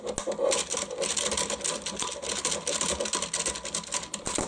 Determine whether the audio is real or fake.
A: real